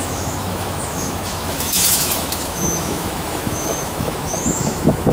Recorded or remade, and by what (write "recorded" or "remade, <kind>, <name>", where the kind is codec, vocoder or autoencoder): remade, autoencoder, DAC-VAE